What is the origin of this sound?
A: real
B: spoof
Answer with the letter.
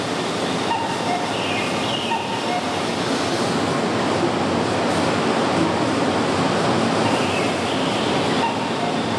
A